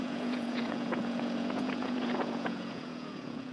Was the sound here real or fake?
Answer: fake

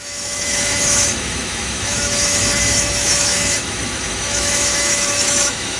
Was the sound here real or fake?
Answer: fake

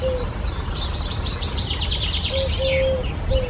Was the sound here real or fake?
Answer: real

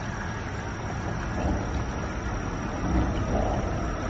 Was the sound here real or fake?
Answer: real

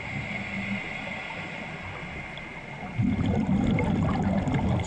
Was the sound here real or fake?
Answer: real